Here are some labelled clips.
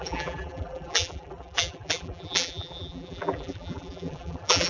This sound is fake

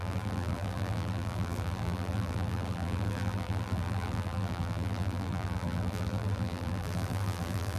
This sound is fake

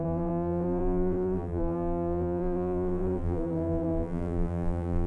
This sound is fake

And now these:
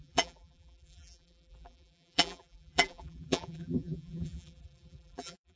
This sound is fake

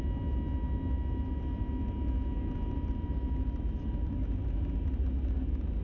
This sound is real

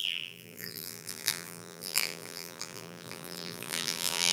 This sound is fake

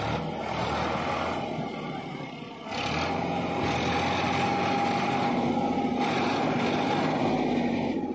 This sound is real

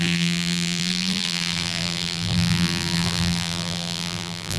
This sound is fake